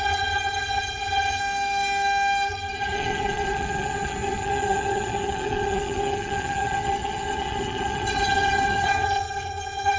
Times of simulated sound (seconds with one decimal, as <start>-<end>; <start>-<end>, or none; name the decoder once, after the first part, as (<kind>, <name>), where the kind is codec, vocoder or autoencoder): 0.0-1.4 (vocoder, HiFi-GAN); 2.5-10.0